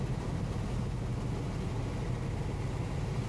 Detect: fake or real real